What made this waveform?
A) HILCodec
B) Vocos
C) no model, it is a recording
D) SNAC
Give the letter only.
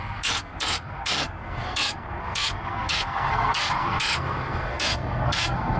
D